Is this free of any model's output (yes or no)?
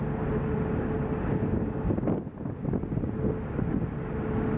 yes